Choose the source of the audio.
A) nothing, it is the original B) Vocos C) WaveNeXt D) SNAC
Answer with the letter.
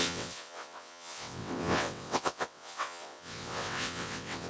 C